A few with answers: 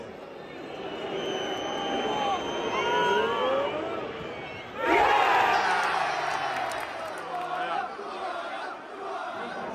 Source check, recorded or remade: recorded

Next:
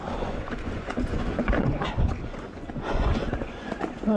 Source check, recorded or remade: remade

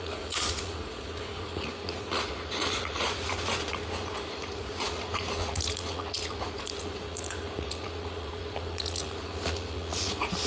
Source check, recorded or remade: remade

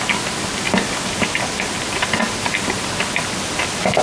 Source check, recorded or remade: recorded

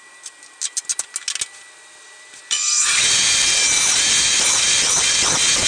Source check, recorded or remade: recorded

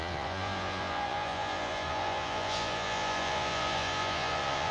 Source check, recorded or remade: remade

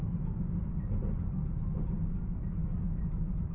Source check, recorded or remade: recorded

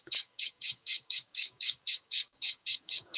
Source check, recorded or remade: remade